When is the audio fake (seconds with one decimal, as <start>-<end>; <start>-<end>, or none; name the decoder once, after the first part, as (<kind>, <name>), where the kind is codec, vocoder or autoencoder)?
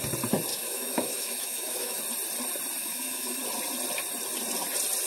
0.5-2.0 (autoencoder, DAC-VAE); 2.8-3.4